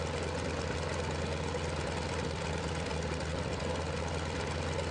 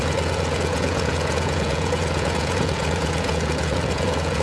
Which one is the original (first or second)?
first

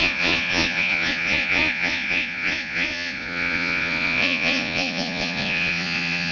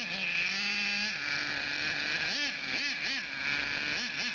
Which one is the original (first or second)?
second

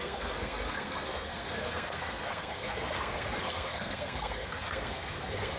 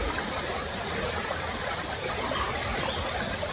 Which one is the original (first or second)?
second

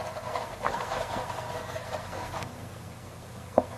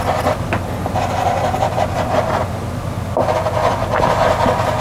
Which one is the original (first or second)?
second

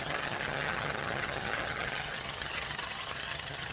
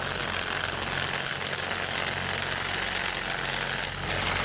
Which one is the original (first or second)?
second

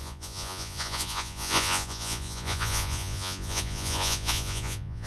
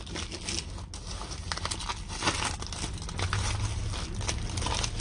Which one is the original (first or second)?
second